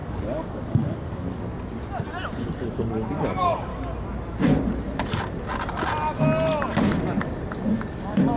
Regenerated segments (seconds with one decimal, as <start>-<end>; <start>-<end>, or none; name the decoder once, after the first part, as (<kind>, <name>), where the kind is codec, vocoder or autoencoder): 0.0-1.5 (codec, DAC); 2.6-3.7; 7.9-8.4